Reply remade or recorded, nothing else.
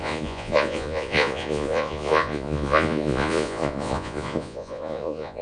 remade